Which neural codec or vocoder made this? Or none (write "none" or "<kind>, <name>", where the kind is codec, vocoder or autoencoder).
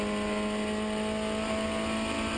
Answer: none